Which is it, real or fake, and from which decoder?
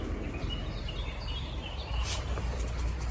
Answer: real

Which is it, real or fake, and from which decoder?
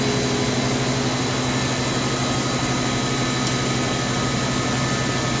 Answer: real